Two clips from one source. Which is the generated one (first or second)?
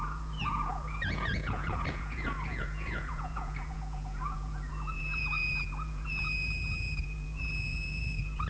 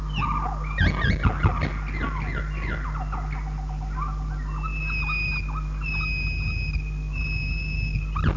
first